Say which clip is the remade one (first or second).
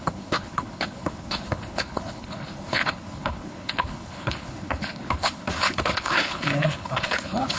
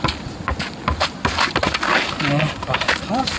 first